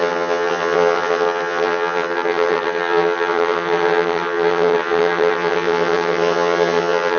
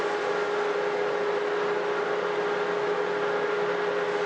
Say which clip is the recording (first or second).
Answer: second